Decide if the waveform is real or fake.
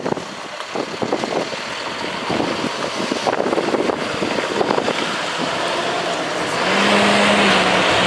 real